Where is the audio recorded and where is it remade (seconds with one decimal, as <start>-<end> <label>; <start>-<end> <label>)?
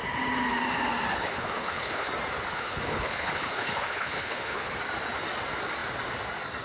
0.0-1.1 recorded; 1.1-2.1 remade; 2.1-2.5 recorded; 2.5-4.7 remade; 4.7-6.6 recorded